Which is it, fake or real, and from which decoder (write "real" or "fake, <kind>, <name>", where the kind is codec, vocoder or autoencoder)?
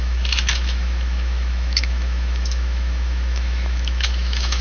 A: fake, autoencoder, DAC-VAE